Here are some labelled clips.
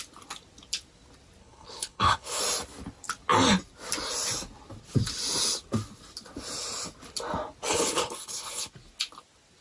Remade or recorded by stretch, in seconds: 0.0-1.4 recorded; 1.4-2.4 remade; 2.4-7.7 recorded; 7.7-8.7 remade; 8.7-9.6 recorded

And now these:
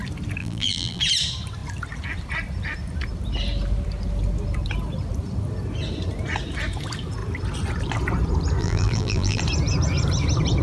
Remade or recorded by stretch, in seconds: 0.0-0.4 recorded; 0.4-1.0 remade; 1.0-8.6 recorded; 8.6-9.4 remade; 9.4-10.6 recorded